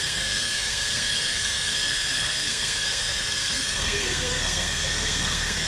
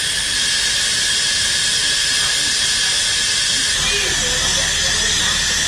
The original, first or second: second